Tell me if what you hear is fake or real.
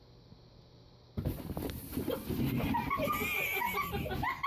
real